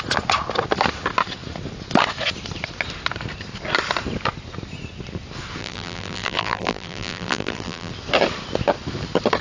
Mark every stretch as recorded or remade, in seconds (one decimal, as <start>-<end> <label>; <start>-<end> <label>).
0.0-5.6 recorded; 5.6-7.9 remade; 7.9-9.4 recorded